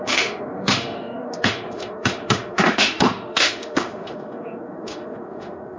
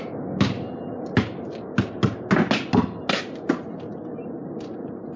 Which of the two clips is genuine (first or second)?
second